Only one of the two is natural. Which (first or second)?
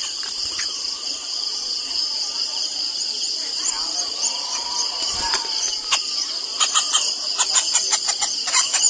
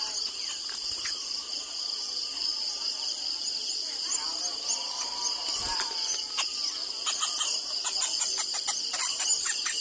second